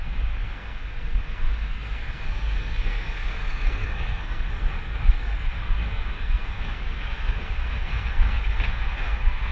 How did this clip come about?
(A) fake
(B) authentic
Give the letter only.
A